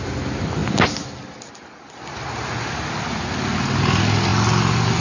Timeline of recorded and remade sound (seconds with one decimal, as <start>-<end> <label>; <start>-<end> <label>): 0.0-5.0 recorded